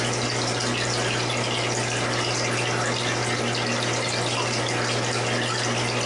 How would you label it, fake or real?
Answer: real